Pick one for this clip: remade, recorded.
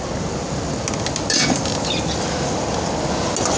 recorded